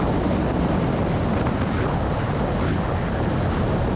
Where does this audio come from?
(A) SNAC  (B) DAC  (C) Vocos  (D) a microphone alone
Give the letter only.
D